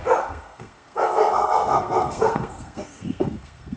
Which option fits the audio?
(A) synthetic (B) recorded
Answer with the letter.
A